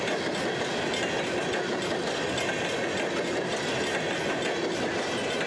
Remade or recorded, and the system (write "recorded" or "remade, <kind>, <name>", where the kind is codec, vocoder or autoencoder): recorded